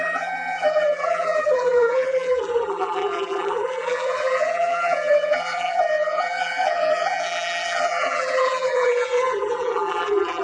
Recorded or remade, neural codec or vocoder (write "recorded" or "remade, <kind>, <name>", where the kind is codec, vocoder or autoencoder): remade, vocoder, BigVGAN v2